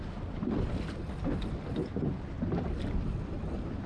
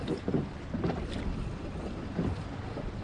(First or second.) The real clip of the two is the first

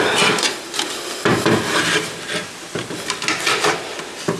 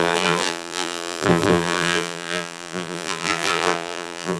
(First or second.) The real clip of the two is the first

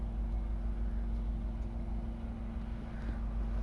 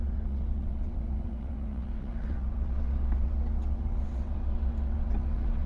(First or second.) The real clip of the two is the first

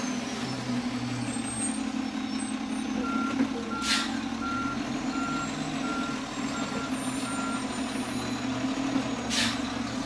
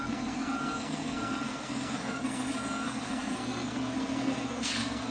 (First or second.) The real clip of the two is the first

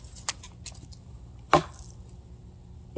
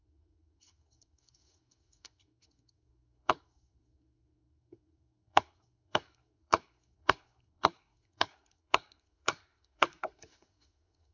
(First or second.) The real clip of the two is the first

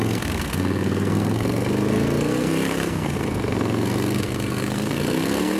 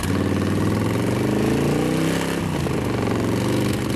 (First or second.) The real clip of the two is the second